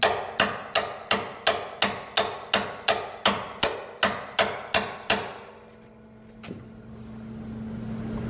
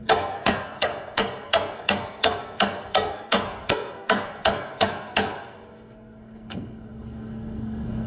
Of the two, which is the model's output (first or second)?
second